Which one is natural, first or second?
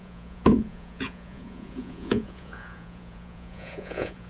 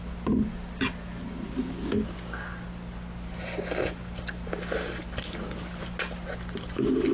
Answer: second